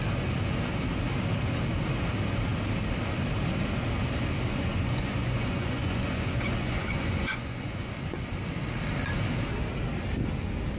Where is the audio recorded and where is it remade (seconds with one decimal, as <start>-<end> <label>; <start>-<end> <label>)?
0.0-4.5 recorded; 4.5-7.9 remade; 7.9-10.8 recorded